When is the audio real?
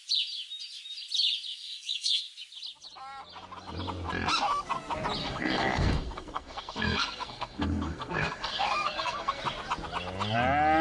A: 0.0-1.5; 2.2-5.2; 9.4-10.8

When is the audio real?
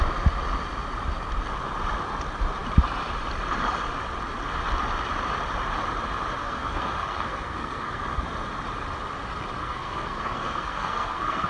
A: 0.0-6.4; 8.2-9.6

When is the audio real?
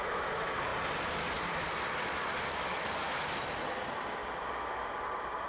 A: 0.0-5.5